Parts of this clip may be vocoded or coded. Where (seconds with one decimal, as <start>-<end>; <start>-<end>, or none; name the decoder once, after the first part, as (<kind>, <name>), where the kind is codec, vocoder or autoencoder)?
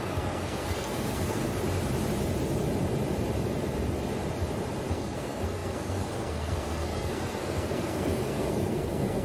0.0-1.5 (codec, SNAC); 4.9-9.2